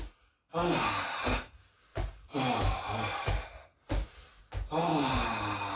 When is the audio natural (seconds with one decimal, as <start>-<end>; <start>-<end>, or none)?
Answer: 0.0-5.8